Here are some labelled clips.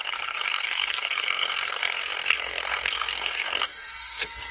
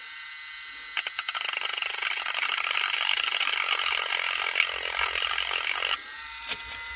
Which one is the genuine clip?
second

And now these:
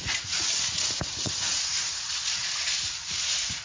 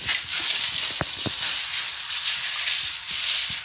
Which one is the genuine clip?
second